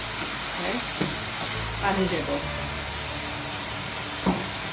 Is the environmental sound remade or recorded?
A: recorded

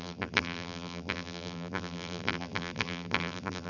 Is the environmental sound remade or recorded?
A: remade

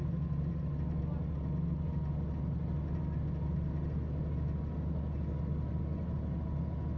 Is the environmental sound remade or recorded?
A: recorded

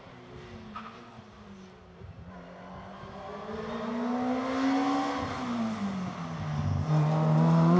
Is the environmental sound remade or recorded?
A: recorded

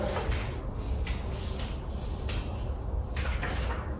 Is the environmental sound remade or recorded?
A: recorded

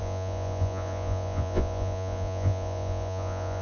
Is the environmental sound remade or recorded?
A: remade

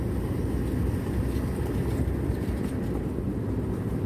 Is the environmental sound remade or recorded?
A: recorded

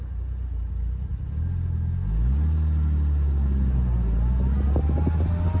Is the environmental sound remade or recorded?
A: recorded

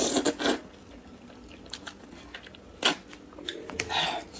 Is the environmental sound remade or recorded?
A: recorded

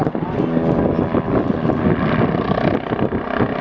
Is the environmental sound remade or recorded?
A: recorded